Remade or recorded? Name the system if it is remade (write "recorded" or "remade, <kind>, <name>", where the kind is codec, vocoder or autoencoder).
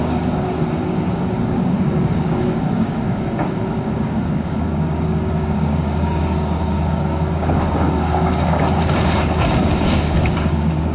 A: remade, codec, DAC